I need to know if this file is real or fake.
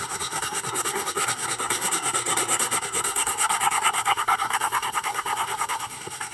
fake